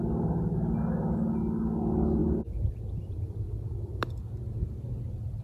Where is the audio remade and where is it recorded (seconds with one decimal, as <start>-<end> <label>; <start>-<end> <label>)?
0.0-5.4 recorded